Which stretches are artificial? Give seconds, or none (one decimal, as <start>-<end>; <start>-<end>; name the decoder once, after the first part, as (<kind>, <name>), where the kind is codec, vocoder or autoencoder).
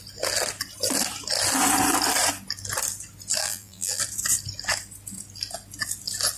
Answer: 3.4-4.0 (vocoder, BigVGAN v2)